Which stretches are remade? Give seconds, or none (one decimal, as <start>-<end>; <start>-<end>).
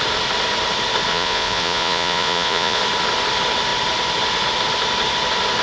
1.1-2.8